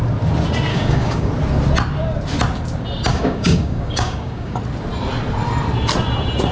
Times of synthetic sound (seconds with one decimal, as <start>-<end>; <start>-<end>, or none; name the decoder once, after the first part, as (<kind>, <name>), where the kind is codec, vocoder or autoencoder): 0.7-1.3 (codec, DAC); 3.1-4.6